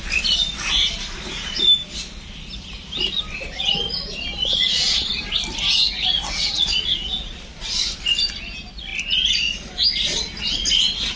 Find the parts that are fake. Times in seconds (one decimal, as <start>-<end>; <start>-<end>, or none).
none